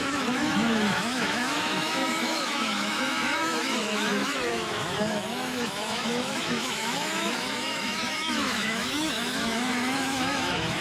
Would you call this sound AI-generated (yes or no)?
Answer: yes